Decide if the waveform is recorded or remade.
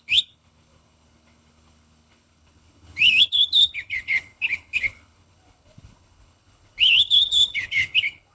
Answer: remade